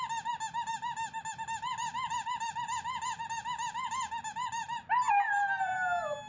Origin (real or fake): real